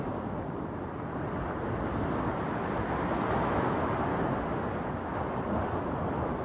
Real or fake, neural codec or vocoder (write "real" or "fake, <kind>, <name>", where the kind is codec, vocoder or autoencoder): real